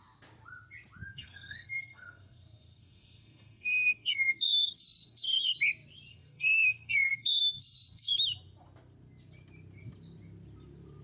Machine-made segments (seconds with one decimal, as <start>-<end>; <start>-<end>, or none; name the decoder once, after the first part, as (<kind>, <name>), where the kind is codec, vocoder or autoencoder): 1.1-5.5 (codec, SNAC); 6.1-8.1